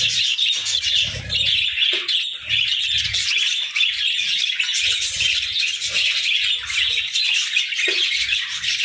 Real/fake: real